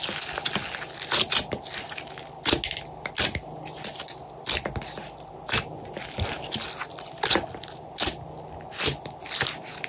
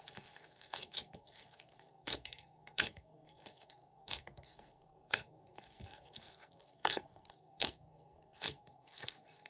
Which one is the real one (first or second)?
first